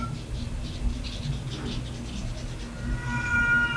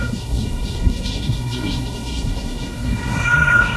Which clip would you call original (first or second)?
first